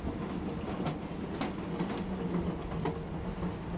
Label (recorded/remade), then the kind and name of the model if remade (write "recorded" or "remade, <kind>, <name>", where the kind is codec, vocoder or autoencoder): recorded